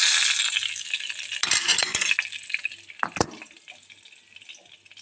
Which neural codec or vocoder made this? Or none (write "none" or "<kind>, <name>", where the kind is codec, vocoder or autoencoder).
none